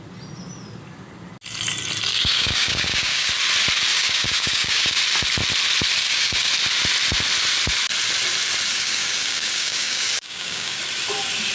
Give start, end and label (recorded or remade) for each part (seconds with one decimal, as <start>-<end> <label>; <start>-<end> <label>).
0.0-2.1 recorded; 2.1-3.3 remade; 3.3-3.9 recorded; 3.9-5.0 remade; 5.0-6.0 recorded; 6.0-6.5 remade; 6.5-8.7 recorded; 8.7-10.8 remade; 10.8-11.5 recorded